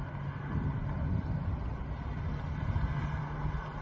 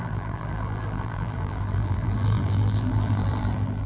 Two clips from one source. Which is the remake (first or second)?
second